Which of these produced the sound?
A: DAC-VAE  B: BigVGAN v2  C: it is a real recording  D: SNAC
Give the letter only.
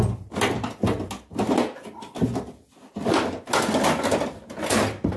C